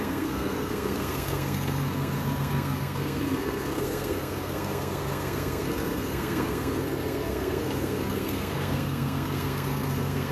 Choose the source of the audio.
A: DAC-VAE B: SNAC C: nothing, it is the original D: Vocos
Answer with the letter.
B